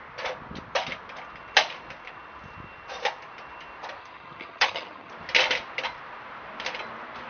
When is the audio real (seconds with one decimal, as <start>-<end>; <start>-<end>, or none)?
0.0-4.0; 5.1-7.3